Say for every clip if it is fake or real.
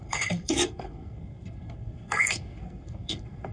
fake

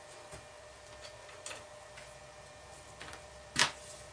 real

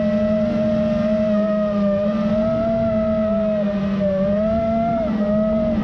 real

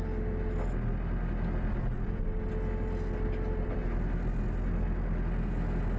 real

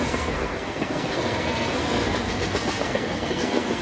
fake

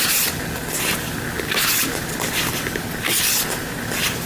real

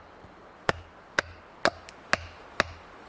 real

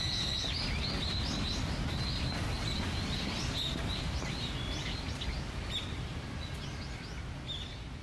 real